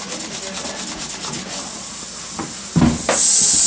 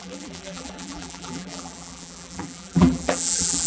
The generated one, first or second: second